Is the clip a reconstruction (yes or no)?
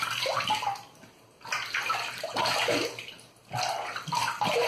no